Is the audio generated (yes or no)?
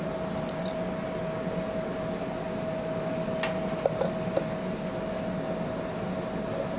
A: no